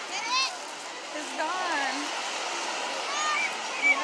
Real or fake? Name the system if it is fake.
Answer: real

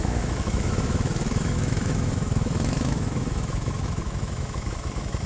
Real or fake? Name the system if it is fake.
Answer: fake, autoencoder, DAC-VAE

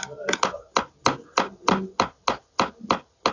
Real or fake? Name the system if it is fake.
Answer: real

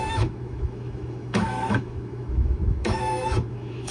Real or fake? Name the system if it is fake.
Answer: fake, autoencoder, DAC-VAE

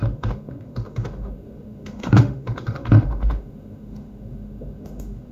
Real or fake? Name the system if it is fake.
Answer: fake, autoencoder, DAC-VAE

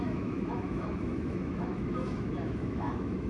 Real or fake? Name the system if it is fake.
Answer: fake, autoencoder, DAC-VAE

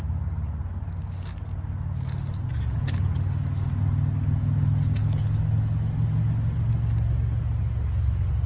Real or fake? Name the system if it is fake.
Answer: real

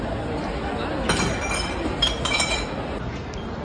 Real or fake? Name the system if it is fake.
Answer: real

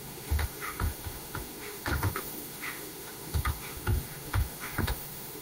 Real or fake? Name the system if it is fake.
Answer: fake, autoencoder, DAC-VAE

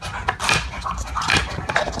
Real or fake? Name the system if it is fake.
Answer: real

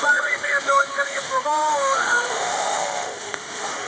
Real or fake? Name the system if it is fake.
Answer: fake, autoencoder, DAC-VAE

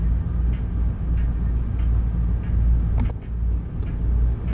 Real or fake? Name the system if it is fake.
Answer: real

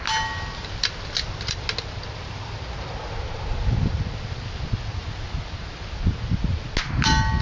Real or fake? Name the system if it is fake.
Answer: real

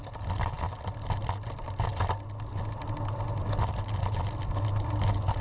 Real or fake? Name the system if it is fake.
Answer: real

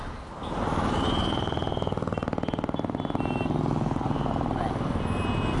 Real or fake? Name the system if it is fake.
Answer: real